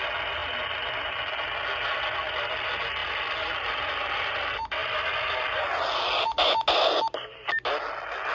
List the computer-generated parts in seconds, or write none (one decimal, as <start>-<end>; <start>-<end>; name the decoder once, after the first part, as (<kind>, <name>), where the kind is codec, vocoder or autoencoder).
0.4-1.0 (vocoder, BigVGAN v2); 3.0-4.1